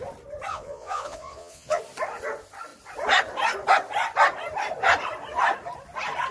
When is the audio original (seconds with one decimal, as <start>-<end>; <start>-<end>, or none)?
0.0-0.5; 1.8-6.3